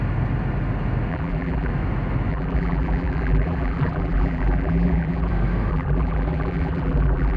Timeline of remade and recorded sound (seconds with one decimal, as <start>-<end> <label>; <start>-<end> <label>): 0.0-1.1 recorded; 1.1-1.7 remade; 1.7-2.3 recorded; 2.3-5.3 remade; 5.3-5.7 recorded; 5.7-7.4 remade